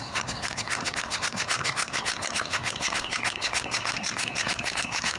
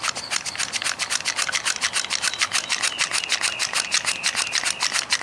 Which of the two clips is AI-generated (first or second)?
first